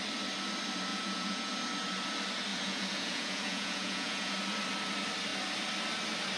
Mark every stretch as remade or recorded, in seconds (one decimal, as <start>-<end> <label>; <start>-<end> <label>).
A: 0.0-0.9 recorded; 0.9-1.5 remade; 1.5-2.5 recorded; 2.5-4.3 remade; 4.3-6.4 recorded